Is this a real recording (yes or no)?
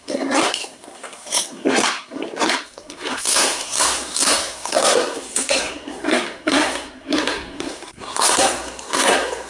no